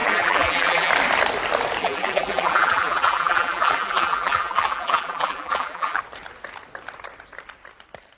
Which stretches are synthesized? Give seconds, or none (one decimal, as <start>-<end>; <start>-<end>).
0.0-0.9; 1.8-6.0